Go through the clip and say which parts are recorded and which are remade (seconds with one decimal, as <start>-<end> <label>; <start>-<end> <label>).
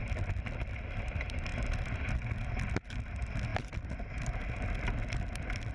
0.0-5.7 recorded